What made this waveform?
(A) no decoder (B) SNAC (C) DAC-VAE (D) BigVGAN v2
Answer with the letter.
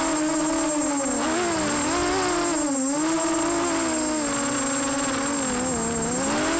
A